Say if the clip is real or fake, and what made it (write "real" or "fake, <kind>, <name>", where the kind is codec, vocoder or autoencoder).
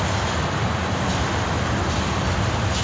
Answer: real